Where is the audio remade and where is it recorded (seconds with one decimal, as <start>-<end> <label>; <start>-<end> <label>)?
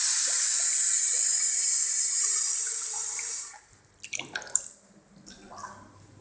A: 0.0-1.3 recorded; 1.3-3.8 remade; 3.8-6.2 recorded